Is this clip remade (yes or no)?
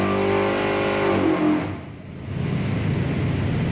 no